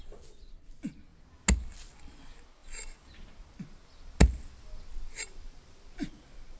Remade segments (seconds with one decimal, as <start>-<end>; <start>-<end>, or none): none